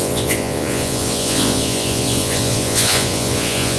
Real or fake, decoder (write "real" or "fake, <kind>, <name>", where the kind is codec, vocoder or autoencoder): fake, vocoder, Vocos